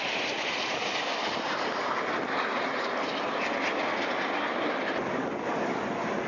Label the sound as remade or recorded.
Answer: recorded